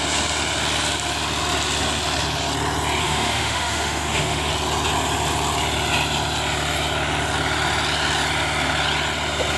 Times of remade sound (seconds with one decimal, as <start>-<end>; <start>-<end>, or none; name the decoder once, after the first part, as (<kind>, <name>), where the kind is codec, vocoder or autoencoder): 3.0-4.5 (autoencoder, DAC-VAE)